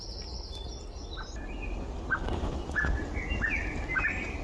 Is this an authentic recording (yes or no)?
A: yes